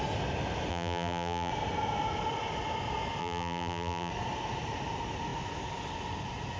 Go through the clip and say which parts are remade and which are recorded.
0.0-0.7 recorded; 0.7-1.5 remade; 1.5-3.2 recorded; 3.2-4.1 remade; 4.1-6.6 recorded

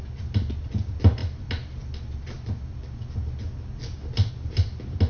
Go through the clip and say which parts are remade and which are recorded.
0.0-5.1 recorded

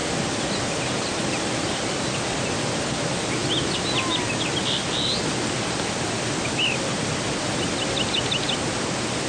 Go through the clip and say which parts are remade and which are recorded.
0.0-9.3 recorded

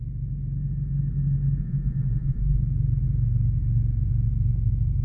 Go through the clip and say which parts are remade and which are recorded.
0.0-1.6 recorded; 1.6-2.6 remade; 2.6-5.0 recorded

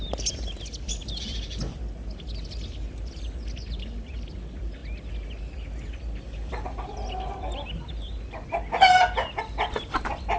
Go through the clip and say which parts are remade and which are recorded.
0.0-10.4 recorded